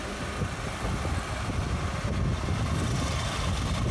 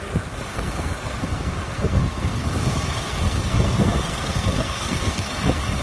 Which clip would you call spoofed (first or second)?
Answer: second